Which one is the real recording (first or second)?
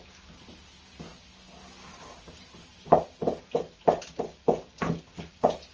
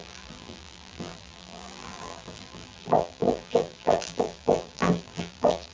first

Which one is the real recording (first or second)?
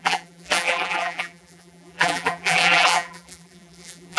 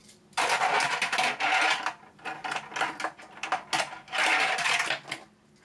second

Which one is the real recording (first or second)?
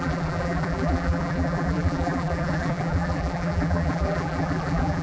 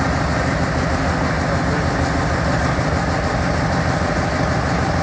second